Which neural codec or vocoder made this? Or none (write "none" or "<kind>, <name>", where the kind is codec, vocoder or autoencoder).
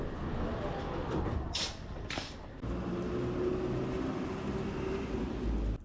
none